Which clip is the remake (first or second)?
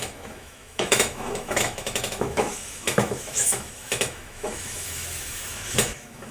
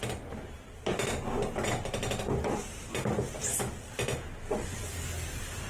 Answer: first